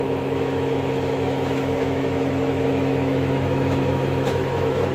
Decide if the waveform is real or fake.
fake